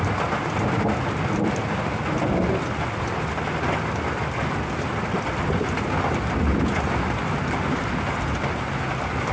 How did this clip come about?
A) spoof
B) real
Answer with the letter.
B